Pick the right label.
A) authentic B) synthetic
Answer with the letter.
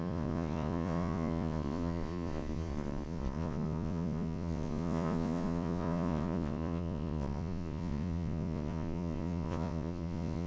B